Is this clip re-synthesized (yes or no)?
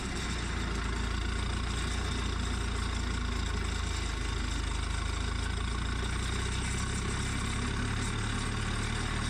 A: no